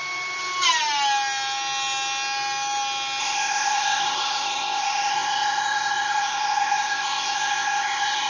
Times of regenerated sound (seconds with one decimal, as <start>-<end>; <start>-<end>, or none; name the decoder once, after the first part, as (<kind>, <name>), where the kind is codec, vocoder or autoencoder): 3.2-8.3 (codec, ZipCodec)